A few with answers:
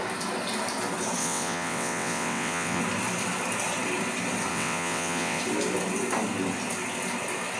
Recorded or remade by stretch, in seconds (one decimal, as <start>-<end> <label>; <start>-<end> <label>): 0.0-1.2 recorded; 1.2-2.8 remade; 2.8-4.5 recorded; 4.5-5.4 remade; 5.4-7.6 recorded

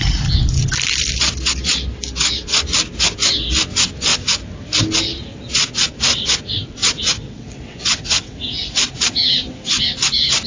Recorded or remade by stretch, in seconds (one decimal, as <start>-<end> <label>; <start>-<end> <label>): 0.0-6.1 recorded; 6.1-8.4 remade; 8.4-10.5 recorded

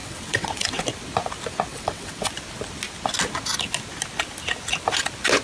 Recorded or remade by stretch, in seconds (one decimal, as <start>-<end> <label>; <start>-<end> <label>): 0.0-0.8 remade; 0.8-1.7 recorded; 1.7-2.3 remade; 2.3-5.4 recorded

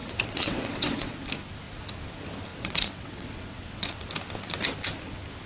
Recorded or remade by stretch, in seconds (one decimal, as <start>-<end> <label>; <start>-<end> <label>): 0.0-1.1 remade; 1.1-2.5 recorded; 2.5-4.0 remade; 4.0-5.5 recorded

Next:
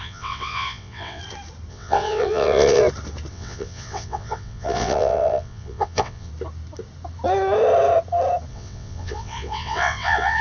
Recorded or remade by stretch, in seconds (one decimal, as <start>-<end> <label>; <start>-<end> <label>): 0.0-1.2 remade; 1.2-1.7 recorded; 1.7-2.8 remade; 2.8-3.3 recorded; 3.3-6.3 remade; 6.3-8.5 recorded; 8.5-10.4 remade

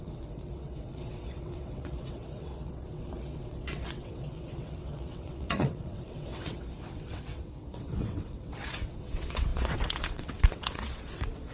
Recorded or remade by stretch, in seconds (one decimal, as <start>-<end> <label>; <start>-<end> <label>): 0.0-11.5 remade